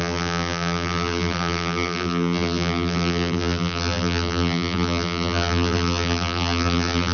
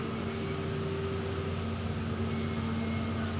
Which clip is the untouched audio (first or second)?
second